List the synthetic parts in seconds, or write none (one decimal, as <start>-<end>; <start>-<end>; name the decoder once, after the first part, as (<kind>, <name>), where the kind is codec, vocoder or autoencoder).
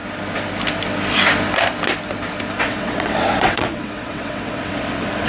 2.6-5.3 (vocoder, WaveNeXt)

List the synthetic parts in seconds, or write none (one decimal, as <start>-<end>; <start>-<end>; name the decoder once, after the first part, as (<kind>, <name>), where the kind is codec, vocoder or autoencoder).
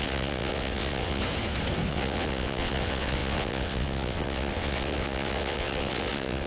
0.0-1.2 (vocoder, WaveNeXt); 1.9-6.5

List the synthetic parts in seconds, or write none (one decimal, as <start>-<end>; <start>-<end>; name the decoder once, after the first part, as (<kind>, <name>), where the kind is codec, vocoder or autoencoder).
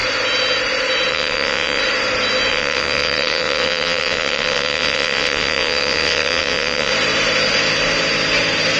1.1-1.8 (vocoder, WaveNeXt); 2.5-6.9